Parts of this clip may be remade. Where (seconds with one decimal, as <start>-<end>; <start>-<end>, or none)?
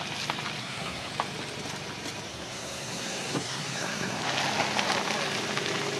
0.6-1.1; 2.3-4.2